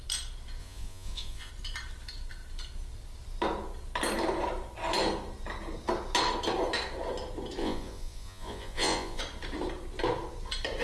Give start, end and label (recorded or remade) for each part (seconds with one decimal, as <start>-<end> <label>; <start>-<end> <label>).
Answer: 0.0-0.6 recorded; 0.6-1.5 remade; 1.5-7.6 recorded; 7.6-9.2 remade; 9.2-10.8 recorded